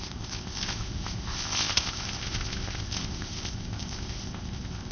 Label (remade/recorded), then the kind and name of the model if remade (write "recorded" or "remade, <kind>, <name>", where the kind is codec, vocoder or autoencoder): remade, codec, ZipCodec